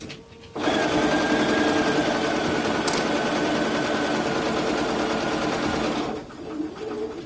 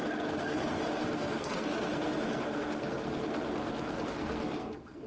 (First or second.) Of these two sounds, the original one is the first